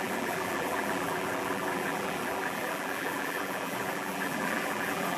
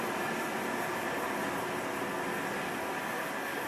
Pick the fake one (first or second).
first